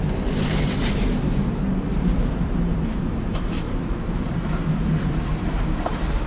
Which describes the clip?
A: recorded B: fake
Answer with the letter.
B